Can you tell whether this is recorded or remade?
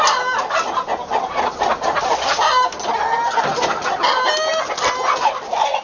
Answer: recorded